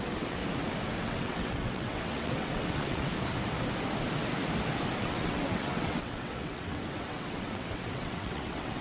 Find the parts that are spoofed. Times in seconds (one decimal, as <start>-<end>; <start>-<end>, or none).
0.0-0.4; 1.0-3.1; 5.0-8.8